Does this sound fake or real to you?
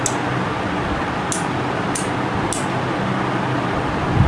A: real